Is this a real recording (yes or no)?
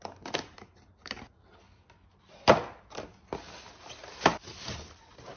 yes